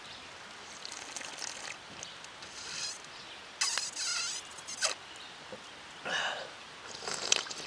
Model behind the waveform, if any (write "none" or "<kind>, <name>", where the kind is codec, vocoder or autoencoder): none